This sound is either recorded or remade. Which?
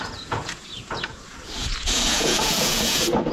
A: remade